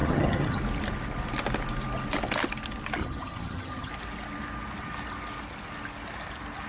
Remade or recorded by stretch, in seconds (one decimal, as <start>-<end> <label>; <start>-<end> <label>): 0.0-0.6 remade; 0.6-3.0 recorded; 3.0-3.9 remade; 3.9-6.7 recorded